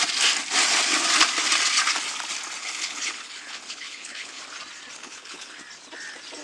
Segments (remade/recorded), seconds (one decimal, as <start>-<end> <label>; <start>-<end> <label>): 0.0-2.6 recorded; 2.6-4.4 remade; 4.4-5.0 recorded; 5.0-5.6 remade; 5.6-6.4 recorded